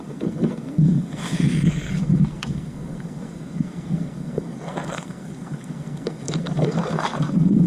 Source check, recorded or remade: remade